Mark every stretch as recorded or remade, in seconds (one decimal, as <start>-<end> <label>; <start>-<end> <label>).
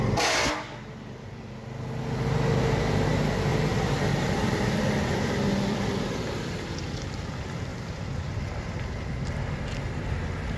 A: 0.0-3.5 recorded; 3.5-7.3 remade; 7.3-7.7 recorded; 7.7-9.0 remade; 9.0-10.6 recorded